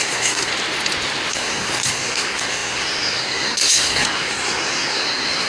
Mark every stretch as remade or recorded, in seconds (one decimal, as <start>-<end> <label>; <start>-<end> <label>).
0.0-0.5 remade; 0.5-1.3 recorded; 1.3-5.5 remade